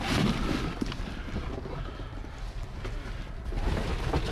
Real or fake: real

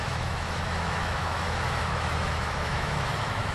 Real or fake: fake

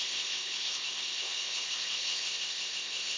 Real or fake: fake